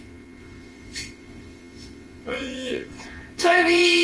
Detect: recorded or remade remade